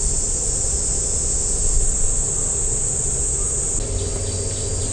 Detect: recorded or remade recorded